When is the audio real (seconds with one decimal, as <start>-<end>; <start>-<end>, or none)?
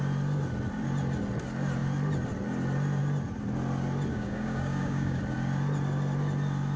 0.0-4.1; 5.2-6.8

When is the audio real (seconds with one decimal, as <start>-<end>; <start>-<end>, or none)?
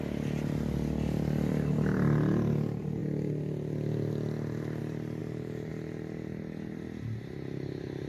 0.0-5.2; 5.7-8.1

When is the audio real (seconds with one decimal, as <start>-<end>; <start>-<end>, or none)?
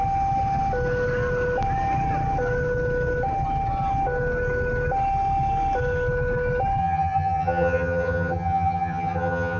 0.0-6.8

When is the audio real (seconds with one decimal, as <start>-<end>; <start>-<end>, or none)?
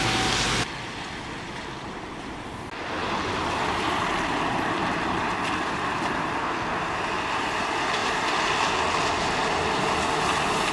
0.0-6.4; 6.9-10.7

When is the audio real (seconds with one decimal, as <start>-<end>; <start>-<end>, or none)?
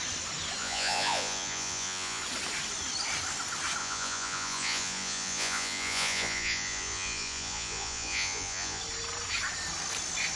0.0-0.6; 2.2-3.8; 8.8-10.4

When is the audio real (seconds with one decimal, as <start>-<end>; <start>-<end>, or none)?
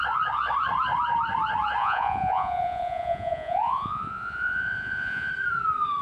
0.0-1.8; 5.3-6.0